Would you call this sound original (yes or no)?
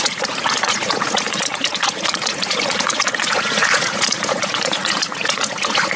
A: no